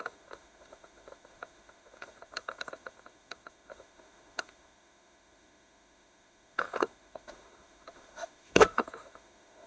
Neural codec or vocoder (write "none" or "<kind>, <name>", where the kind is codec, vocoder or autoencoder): autoencoder, DAC-VAE